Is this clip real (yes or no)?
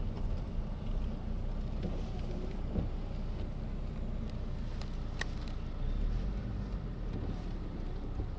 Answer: yes